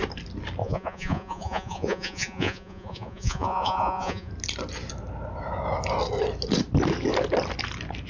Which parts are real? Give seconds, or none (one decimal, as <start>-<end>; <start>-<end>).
0.0-0.6; 4.3-8.1